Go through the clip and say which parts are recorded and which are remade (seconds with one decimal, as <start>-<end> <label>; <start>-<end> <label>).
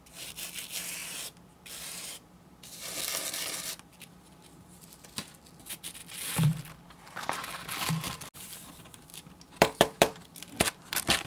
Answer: 0.0-6.0 recorded; 6.0-6.6 remade; 6.6-9.1 recorded; 9.1-11.3 remade